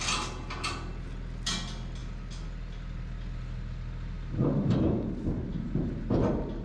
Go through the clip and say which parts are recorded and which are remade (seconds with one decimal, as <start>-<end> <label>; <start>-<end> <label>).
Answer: 0.0-6.6 recorded